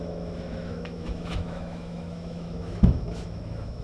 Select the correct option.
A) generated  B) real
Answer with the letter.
A